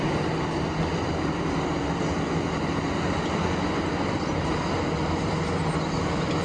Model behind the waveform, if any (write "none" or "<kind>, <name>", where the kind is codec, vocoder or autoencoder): none